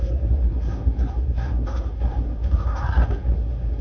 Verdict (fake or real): fake